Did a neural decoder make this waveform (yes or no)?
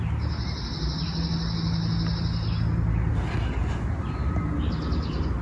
no